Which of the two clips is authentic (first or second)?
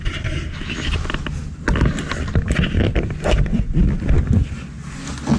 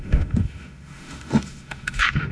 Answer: first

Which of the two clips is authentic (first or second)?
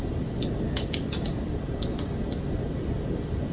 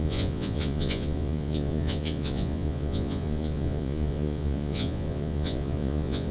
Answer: first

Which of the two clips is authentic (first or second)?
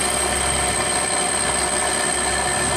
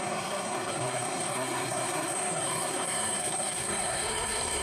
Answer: first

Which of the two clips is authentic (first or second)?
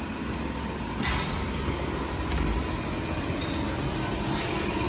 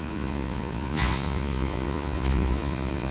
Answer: first